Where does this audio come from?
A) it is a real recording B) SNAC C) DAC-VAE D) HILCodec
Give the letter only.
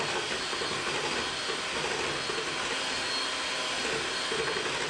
A